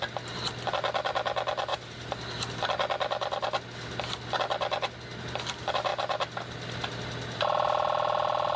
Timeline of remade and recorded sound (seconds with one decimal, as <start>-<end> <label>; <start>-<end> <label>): 0.0-8.6 recorded